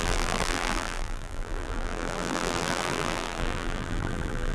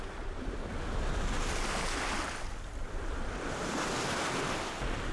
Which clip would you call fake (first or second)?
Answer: first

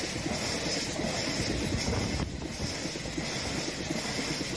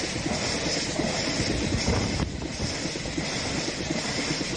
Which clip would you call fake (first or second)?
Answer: second